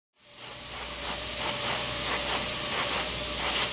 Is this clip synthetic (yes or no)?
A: no